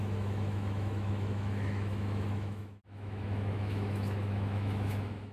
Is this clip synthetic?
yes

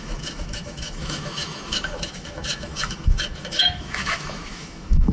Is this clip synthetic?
yes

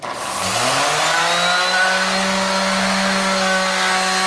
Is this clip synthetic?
no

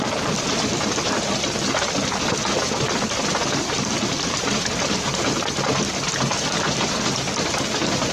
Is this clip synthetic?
no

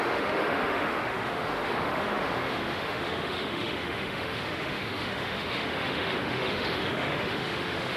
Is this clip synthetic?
yes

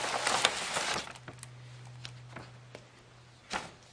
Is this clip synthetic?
no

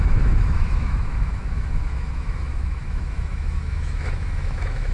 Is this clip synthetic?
yes